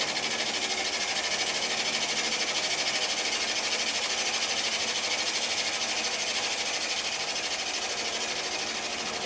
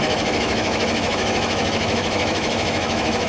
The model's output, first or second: second